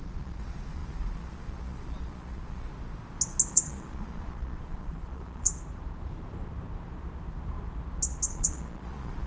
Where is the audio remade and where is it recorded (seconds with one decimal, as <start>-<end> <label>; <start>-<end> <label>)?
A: 0.0-2.7 remade; 2.7-3.5 recorded; 3.5-5.5 remade; 5.5-8.3 recorded; 8.3-9.3 remade

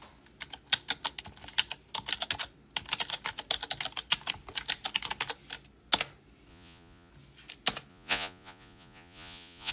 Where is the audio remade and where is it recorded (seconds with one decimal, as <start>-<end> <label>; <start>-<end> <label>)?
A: 0.0-6.5 recorded; 6.5-7.1 remade; 7.1-7.9 recorded; 7.9-9.7 remade

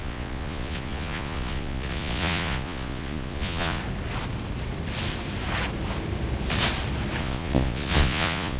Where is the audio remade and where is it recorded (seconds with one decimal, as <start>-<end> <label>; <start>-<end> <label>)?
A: 0.0-3.8 remade; 3.8-7.2 recorded; 7.2-8.6 remade

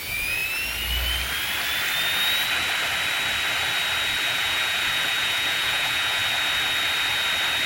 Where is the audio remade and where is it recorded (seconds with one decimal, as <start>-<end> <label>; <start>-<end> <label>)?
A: 0.0-0.4 remade; 0.4-4.3 recorded; 4.3-6.2 remade; 6.2-7.7 recorded